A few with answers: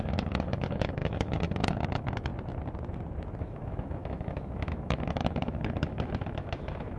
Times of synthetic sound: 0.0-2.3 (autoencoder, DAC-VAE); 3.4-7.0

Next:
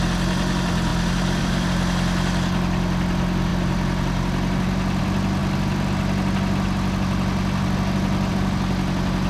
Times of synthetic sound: none